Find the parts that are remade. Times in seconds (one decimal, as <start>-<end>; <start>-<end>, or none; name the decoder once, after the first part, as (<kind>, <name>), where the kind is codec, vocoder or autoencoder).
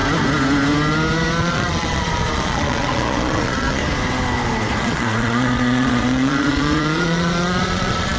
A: 1.4-3.8 (vocoder, Vocos); 4.8-8.2